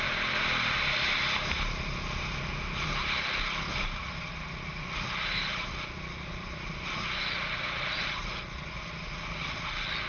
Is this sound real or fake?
real